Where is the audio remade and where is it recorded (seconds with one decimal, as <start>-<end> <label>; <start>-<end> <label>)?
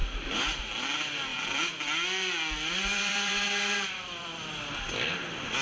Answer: 0.0-1.3 recorded; 1.3-4.5 remade; 4.5-5.6 recorded